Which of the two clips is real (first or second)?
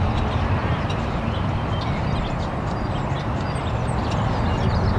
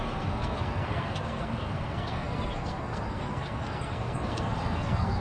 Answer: first